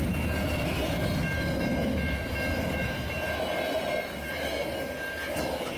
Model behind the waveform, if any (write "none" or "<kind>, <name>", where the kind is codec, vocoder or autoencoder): none